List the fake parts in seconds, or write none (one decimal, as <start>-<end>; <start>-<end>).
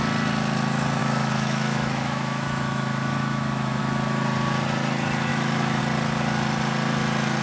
1.0-3.8; 5.3-5.8